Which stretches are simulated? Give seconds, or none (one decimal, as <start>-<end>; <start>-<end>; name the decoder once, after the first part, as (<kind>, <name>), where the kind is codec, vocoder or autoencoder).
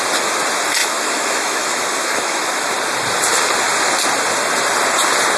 0.8-2.7 (autoencoder, DAC-VAE)